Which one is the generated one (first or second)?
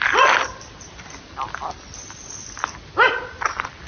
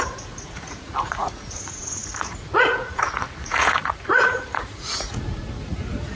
second